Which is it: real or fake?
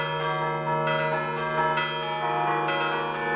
real